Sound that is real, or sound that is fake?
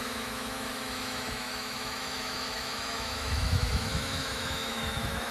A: fake